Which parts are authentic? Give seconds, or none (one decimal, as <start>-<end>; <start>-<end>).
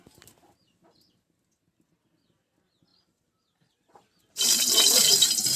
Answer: 0.0-2.9